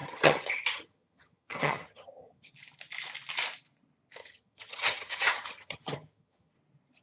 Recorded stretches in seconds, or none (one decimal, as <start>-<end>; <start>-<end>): 2.5-4.2; 6.5-7.0